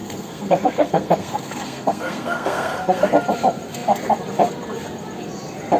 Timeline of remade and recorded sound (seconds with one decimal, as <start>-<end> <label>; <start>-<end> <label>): 0.0-3.1 remade; 3.1-5.8 recorded

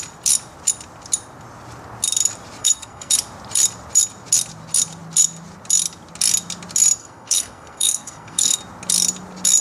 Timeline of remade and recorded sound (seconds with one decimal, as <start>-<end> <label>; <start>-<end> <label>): 0.0-2.6 recorded; 2.6-3.1 remade; 3.1-7.0 recorded; 7.0-8.6 remade; 8.6-9.6 recorded